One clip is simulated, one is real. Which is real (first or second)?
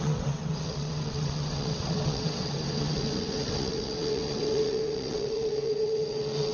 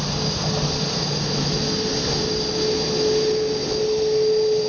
second